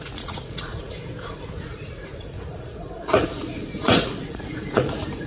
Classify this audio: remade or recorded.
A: remade